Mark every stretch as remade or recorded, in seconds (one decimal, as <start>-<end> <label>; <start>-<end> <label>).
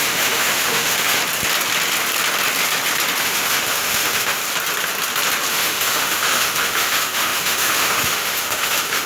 0.0-1.2 remade; 1.2-3.2 recorded; 3.2-4.4 remade; 4.4-5.5 recorded; 5.5-9.1 remade